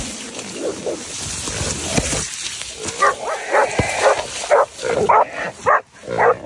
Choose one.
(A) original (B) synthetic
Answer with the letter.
A